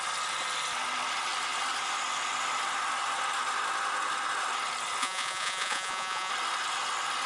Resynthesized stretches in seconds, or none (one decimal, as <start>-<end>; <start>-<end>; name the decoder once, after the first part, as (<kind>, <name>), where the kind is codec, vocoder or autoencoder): 5.0-6.3 (vocoder, Vocos)